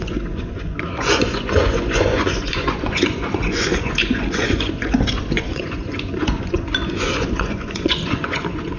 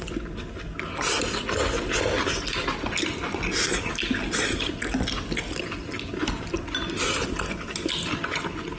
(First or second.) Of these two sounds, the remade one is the first